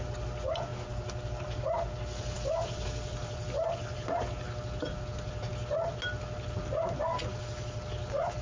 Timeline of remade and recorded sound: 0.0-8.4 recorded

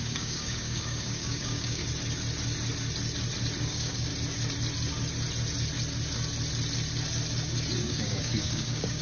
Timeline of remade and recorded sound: 0.0-1.8 remade; 1.8-3.6 recorded; 3.6-4.1 remade; 4.1-7.9 recorded; 7.9-9.0 remade

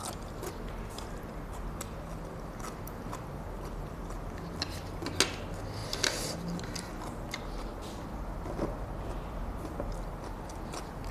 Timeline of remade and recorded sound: 0.0-11.1 recorded

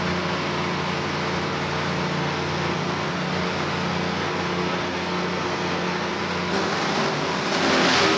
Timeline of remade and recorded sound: 0.0-2.2 recorded; 2.2-3.3 remade; 3.3-3.9 recorded; 3.9-6.1 remade; 6.1-8.2 recorded